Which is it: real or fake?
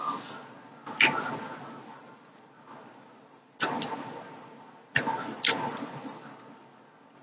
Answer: real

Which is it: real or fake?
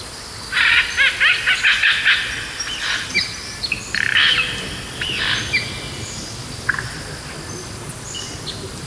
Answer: real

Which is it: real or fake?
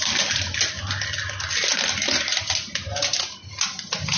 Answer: real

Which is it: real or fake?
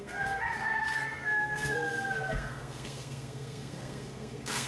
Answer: fake